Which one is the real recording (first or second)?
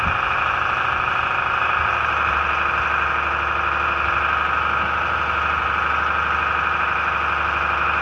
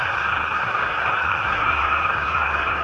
first